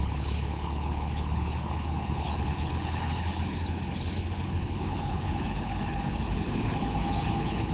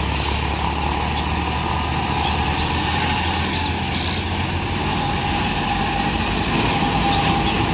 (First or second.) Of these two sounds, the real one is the second